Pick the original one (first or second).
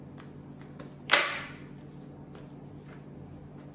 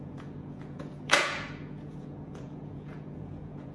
first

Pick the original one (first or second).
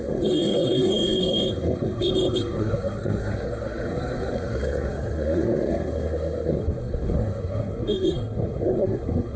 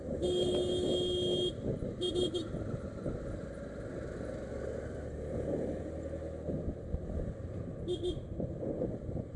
second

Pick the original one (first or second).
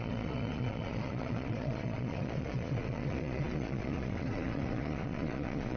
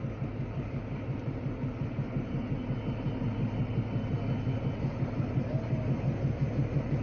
second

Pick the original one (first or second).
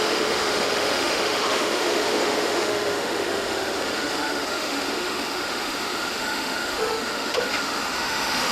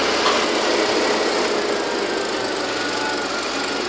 second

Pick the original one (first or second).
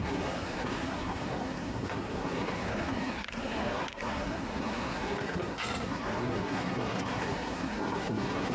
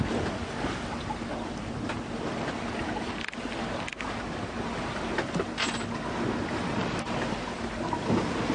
second